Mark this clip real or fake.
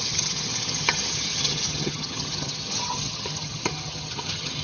fake